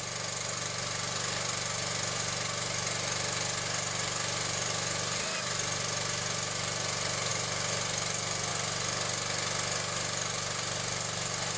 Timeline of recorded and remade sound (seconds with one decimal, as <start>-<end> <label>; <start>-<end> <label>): 0.0-11.6 recorded